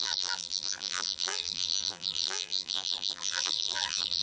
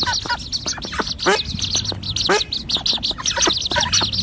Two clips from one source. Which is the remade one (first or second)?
first